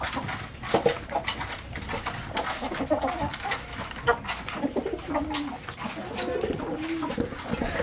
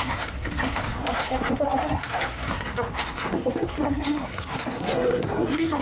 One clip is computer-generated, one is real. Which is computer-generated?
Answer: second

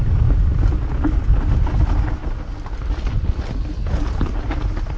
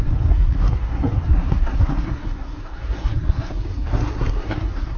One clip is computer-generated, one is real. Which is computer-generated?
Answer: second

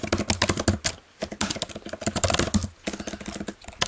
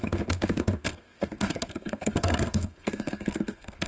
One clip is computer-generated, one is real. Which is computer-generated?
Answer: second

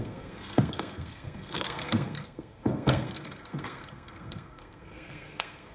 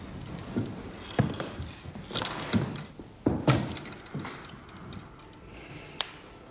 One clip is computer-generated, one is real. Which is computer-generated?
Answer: first